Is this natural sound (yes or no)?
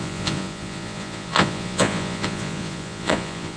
no